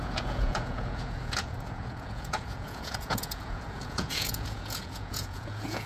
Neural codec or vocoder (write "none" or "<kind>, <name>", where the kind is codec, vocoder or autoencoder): vocoder, Vocos